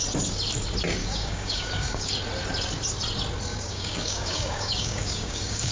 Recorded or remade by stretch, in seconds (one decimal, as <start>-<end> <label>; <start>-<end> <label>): 0.0-1.0 recorded; 1.0-2.1 remade; 2.1-3.5 recorded; 3.5-5.7 remade

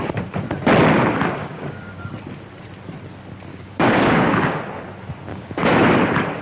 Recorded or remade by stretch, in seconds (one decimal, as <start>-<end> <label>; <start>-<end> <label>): 0.0-1.4 recorded; 1.4-2.0 remade; 2.0-3.5 recorded; 3.5-4.6 remade; 4.6-5.3 recorded; 5.3-5.8 remade; 5.8-6.4 recorded

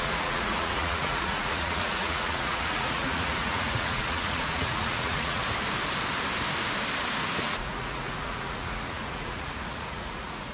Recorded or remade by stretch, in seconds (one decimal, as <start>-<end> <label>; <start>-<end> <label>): 0.0-5.4 remade; 5.4-7.4 recorded; 7.4-10.5 remade